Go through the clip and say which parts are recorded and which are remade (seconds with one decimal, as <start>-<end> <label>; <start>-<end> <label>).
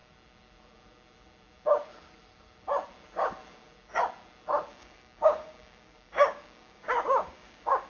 0.0-4.7 recorded; 4.7-7.9 remade